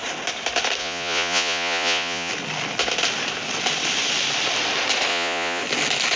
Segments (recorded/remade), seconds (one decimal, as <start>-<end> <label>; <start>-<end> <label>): 0.0-0.8 recorded; 0.8-2.3 remade; 2.3-5.1 recorded; 5.1-5.6 remade; 5.6-6.2 recorded